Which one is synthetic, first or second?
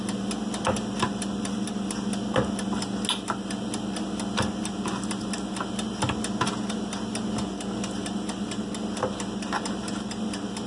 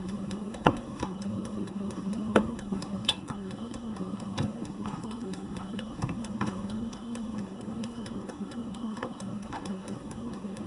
second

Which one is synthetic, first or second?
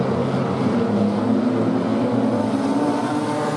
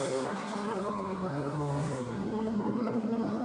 second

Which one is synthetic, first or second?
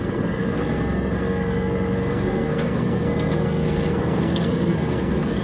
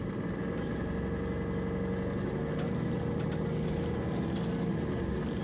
first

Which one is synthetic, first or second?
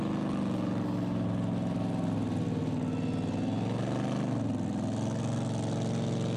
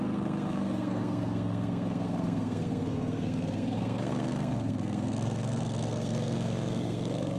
second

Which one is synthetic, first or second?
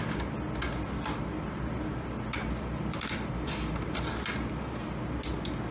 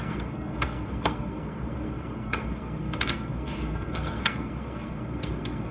second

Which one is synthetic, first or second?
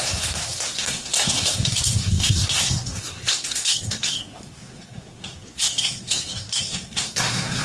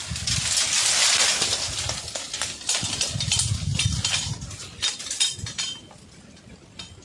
first